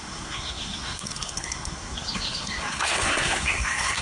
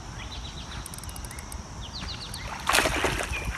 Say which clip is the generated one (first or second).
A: first